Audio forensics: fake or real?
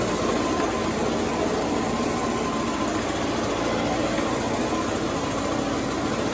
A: real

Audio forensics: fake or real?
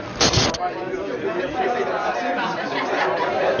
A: real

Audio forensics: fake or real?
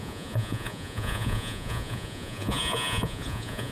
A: fake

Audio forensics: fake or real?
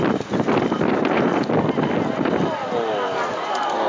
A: real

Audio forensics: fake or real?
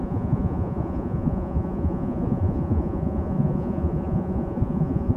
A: fake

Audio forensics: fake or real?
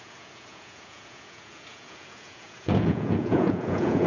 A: fake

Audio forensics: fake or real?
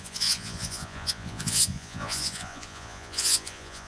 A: fake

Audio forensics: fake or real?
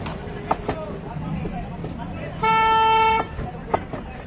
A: real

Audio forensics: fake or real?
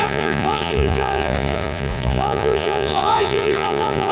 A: fake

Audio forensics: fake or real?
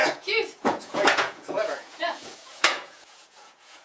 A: fake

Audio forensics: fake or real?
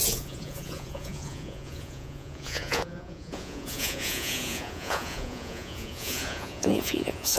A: fake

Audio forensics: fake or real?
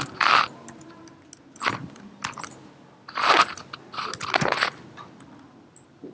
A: real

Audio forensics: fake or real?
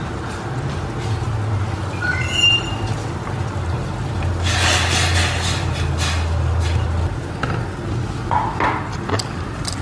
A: real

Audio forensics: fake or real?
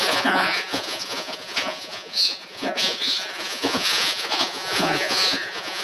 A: fake